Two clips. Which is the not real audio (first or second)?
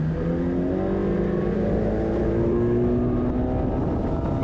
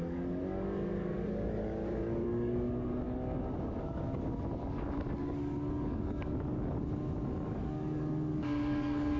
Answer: second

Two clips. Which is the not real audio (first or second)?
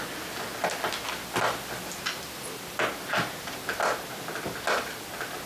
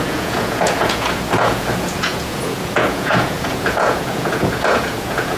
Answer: second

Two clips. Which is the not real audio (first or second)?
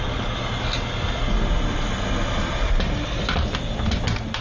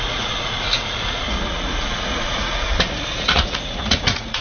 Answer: second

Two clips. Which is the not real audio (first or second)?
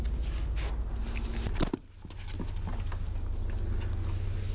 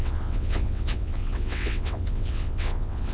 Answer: second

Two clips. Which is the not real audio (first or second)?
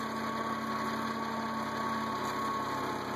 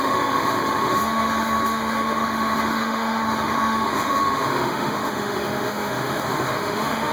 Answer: second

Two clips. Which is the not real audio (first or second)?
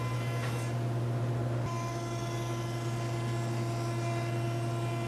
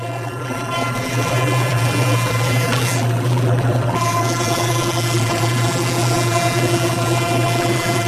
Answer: second